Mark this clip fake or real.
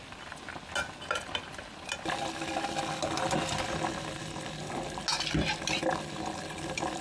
real